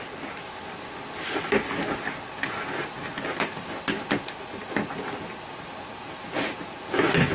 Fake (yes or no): no